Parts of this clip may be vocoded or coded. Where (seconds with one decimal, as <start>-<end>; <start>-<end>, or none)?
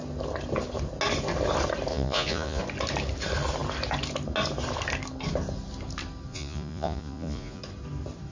1.9-2.6; 6.3-7.6